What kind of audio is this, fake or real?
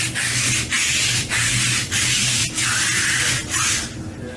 real